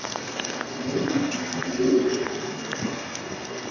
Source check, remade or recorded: remade